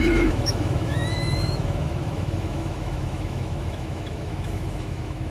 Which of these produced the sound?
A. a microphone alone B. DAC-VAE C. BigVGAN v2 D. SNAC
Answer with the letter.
B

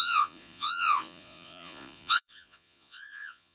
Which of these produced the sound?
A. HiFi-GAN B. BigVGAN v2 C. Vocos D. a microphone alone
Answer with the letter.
C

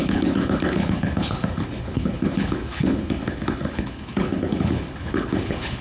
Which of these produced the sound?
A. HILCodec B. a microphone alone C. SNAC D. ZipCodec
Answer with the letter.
A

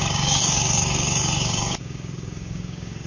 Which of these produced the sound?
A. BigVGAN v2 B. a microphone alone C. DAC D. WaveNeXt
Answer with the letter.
C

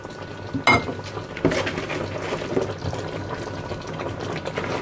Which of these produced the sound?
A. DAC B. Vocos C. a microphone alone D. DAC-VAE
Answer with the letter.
C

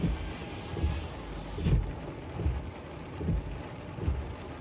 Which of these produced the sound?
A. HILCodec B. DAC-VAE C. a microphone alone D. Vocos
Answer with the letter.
C